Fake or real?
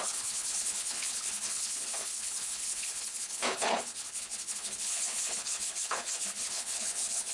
fake